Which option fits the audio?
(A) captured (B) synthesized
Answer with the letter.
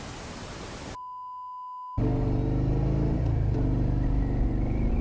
A